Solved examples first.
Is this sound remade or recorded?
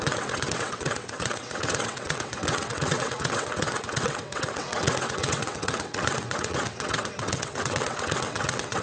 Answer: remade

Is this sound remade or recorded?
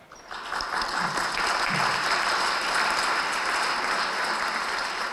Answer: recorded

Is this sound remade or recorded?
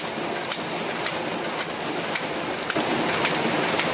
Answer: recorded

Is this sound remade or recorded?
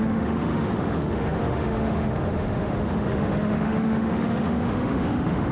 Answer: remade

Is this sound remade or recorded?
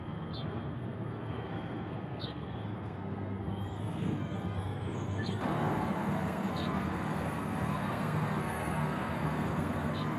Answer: remade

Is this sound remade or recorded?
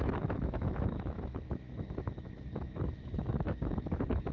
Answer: remade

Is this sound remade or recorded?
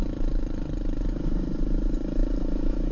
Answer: recorded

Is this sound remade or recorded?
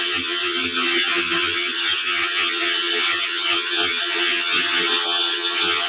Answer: remade